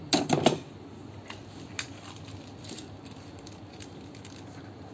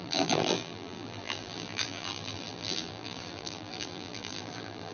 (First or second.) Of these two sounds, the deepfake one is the second